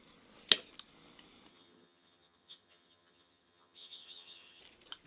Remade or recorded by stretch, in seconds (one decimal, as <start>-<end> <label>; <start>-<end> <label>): 0.0-1.5 recorded; 1.5-4.6 remade; 4.6-5.1 recorded